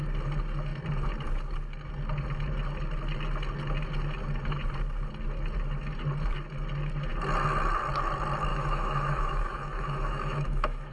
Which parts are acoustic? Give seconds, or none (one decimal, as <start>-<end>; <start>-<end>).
0.0-8.5